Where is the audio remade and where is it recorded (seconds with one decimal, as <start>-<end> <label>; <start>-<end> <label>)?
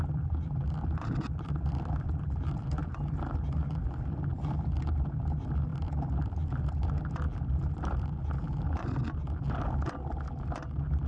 0.0-2.8 remade; 2.8-4.3 recorded; 4.3-8.2 remade; 8.2-11.1 recorded